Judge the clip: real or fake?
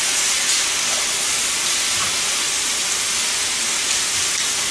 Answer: real